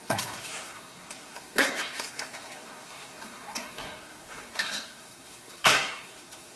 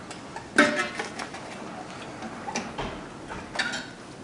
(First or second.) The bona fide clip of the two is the second